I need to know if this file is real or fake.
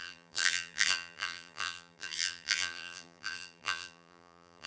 fake